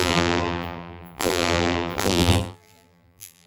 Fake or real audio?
fake